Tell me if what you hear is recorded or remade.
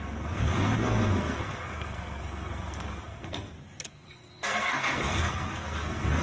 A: remade